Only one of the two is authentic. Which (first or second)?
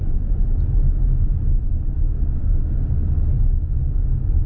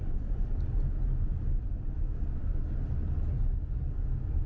first